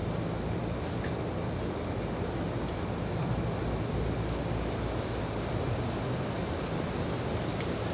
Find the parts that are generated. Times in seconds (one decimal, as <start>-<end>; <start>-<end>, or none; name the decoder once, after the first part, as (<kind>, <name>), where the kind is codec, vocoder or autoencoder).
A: none